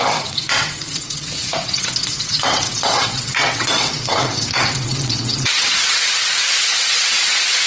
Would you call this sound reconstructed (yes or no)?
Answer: yes